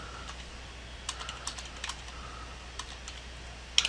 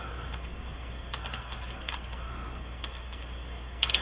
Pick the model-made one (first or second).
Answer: second